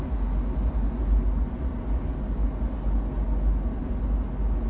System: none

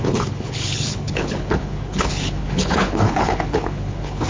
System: codec, HILCodec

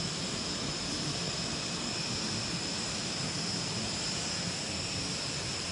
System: none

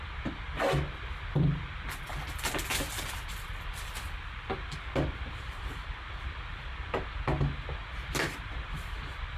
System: none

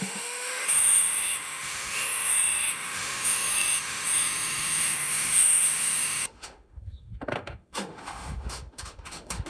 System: autoencoder, DAC-VAE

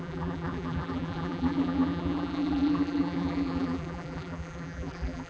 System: vocoder, BigVGAN v2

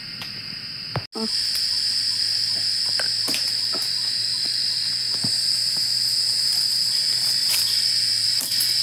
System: none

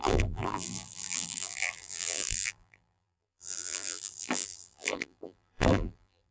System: vocoder, BigVGAN v2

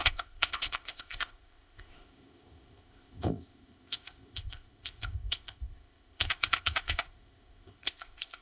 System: codec, ZipCodec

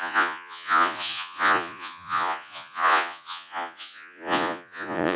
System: vocoder, Vocos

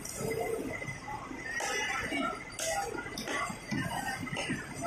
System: none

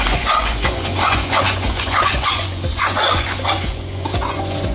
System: vocoder, Vocos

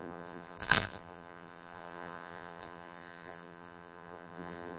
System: vocoder, BigVGAN v2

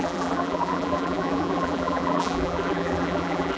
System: vocoder, BigVGAN v2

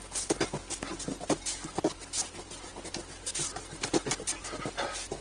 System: none